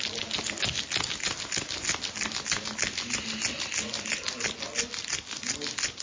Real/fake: real